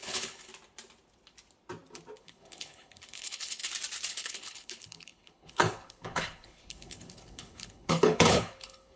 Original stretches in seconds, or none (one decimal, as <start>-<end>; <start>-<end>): 0.5-2.2; 3.6-4.1